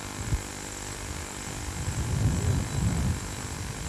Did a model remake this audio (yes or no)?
no